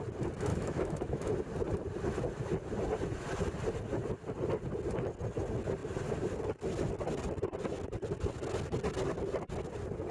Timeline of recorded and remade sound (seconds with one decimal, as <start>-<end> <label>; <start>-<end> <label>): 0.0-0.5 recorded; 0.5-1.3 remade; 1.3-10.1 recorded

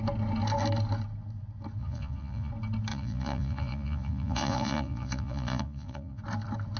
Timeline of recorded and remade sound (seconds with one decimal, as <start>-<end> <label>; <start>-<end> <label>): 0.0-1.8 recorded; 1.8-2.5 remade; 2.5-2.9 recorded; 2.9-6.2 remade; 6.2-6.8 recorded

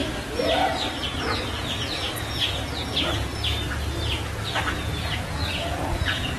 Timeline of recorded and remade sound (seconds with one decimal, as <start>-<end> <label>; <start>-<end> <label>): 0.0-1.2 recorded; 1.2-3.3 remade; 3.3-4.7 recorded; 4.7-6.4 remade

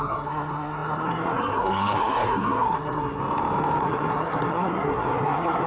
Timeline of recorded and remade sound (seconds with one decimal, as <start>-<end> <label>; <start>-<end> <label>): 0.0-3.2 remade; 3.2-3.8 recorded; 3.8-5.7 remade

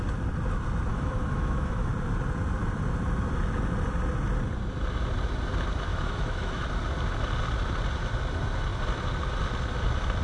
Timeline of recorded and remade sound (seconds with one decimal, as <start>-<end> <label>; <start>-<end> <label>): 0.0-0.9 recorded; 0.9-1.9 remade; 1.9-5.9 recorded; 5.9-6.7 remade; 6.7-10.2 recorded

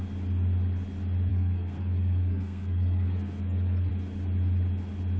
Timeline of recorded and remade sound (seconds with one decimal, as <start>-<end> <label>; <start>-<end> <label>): 0.0-1.3 recorded; 1.3-3.9 remade; 3.9-5.2 recorded

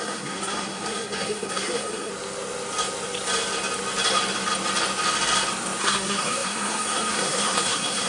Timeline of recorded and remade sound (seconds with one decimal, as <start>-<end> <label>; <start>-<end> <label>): 0.0-2.1 remade; 2.1-5.8 recorded; 5.8-8.1 remade